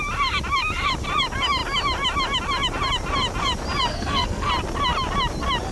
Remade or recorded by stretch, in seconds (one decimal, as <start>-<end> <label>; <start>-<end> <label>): 0.0-3.9 recorded; 3.9-4.5 remade; 4.5-5.7 recorded